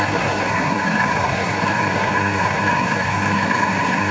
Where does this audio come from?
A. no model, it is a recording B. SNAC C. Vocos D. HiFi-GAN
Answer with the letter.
B